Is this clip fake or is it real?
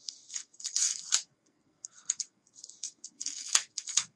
fake